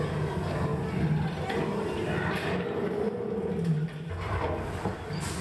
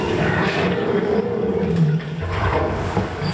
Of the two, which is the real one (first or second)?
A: first